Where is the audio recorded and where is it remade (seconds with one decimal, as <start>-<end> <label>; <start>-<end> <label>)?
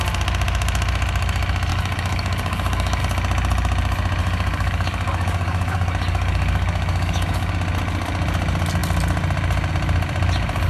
0.0-1.7 recorded; 1.7-3.0 remade; 3.0-4.2 recorded; 4.2-7.5 remade; 7.5-10.7 recorded